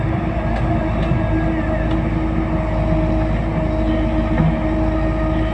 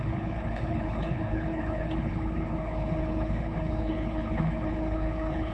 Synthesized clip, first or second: second